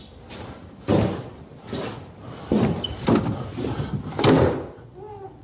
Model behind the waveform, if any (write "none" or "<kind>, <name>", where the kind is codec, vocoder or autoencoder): none